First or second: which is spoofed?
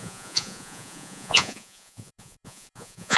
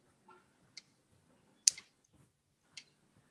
first